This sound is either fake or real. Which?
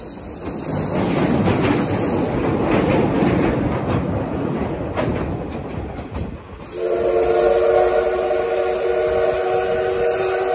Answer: real